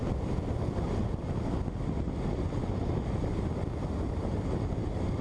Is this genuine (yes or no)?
yes